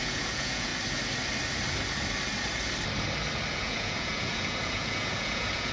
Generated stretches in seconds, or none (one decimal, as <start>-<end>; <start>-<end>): 0.0-0.7; 3.5-5.7